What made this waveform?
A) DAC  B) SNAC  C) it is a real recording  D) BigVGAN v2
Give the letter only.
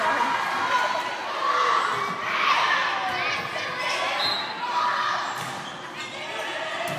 C